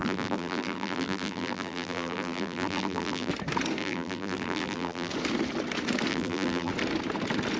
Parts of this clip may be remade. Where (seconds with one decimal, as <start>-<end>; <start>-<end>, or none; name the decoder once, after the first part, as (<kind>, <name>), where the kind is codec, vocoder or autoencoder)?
0.0-3.3 (vocoder, BigVGAN v2); 3.8-5.1; 6.1-6.7